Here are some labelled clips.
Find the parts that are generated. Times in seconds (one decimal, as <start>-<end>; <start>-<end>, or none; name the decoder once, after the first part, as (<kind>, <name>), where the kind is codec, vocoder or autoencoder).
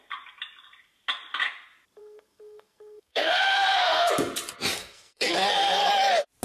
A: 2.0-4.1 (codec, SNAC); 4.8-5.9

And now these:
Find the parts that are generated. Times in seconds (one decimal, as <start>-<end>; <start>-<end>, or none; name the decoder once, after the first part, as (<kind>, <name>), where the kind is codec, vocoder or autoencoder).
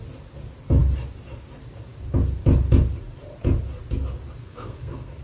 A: 4.4-5.2 (codec, SNAC)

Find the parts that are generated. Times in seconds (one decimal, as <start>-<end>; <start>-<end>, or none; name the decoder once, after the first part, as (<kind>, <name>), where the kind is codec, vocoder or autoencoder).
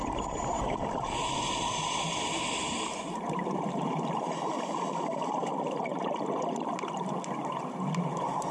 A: 2.9-4.5 (vocoder, BigVGAN v2)